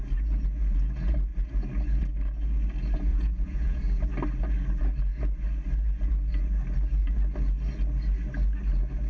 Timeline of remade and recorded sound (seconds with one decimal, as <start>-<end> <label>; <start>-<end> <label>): 0.0-3.1 recorded; 3.1-3.8 remade; 3.8-9.1 recorded

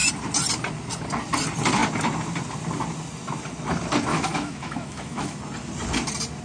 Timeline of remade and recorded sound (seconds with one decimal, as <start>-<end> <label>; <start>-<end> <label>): 0.0-4.1 recorded; 4.1-5.4 remade; 5.4-6.4 recorded

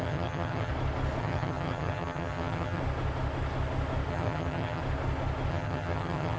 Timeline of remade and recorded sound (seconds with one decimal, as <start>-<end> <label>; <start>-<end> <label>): 0.0-0.7 remade; 0.7-1.2 recorded; 1.2-2.8 remade; 2.8-4.1 recorded; 4.1-4.8 remade; 4.8-5.5 recorded; 5.5-6.4 remade

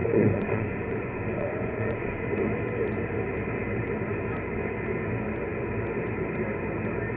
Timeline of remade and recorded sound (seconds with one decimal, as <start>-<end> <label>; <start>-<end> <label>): 0.0-2.3 remade; 2.3-7.2 recorded

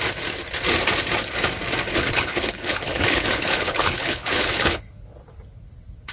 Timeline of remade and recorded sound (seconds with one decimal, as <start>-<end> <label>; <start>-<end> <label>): 0.0-1.9 recorded; 1.9-4.8 remade; 4.8-6.1 recorded

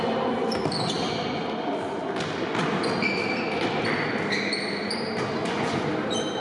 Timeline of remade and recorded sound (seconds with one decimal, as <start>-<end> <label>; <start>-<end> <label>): 0.0-5.4 recorded; 5.4-5.9 remade; 5.9-6.4 recorded

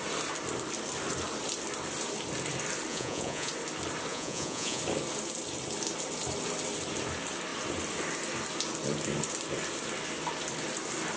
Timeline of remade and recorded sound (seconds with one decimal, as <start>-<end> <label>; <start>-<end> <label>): 0.0-2.9 recorded; 2.9-3.5 remade; 3.5-4.1 recorded; 4.1-4.8 remade; 4.8-11.2 recorded